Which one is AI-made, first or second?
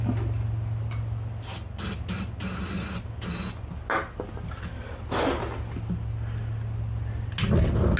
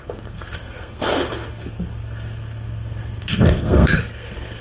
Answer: second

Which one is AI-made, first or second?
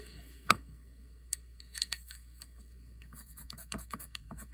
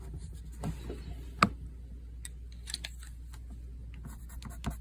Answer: first